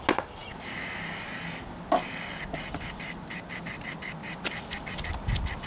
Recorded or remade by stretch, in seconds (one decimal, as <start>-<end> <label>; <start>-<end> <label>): 0.0-5.7 recorded